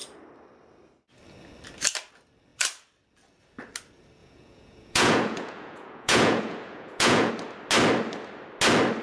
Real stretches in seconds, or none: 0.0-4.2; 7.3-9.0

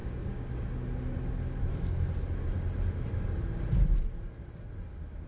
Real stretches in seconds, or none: 0.5-5.3